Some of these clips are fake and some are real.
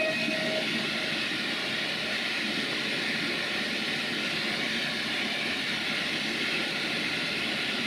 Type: real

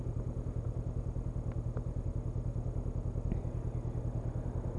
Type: real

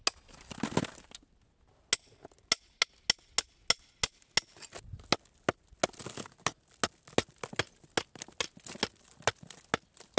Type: real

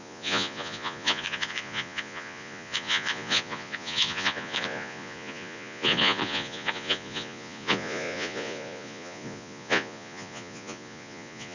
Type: fake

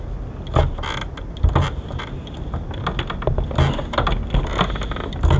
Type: real